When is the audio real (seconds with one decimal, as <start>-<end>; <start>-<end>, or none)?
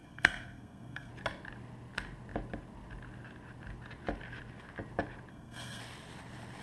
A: 1.1-5.3; 5.8-6.6